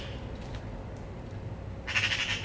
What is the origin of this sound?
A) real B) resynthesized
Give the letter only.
A